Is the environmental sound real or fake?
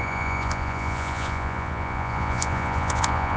fake